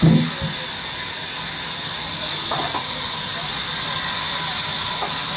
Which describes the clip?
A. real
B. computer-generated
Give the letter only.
A